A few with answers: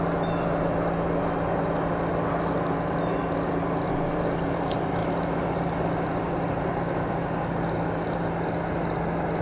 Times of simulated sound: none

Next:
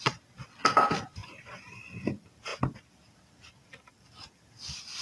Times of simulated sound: 1.2-2.0 (vocoder, BigVGAN v2)

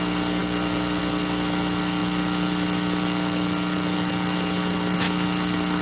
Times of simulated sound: 0.4-1.0 (vocoder, BigVGAN v2); 2.0-4.1

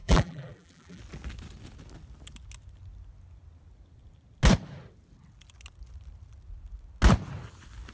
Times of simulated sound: 0.0-1.0 (vocoder, BigVGAN v2)

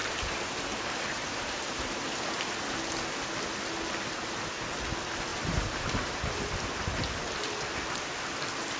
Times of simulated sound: 0.0-2.2 (vocoder, BigVGAN v2); 5.3-6.6